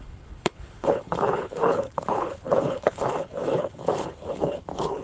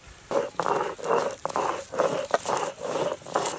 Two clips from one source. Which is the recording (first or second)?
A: second